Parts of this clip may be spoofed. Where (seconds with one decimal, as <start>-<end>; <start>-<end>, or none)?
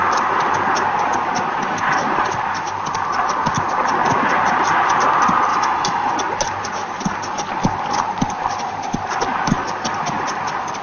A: 5.5-6.1